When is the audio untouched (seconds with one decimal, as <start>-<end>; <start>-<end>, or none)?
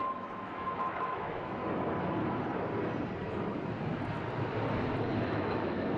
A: 1.6-5.2